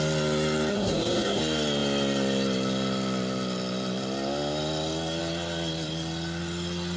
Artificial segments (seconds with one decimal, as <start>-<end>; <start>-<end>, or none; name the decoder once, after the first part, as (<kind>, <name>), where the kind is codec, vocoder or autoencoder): 0.7-1.4 (codec, SNAC)